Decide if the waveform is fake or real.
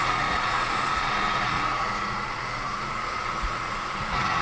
fake